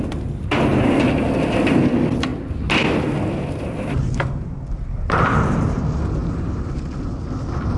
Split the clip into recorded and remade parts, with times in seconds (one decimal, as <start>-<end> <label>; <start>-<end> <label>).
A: 0.0-6.2 recorded; 6.2-6.9 remade; 6.9-7.8 recorded